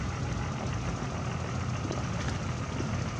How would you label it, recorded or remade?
recorded